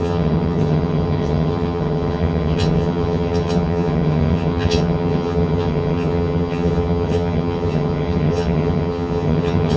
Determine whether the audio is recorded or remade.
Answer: remade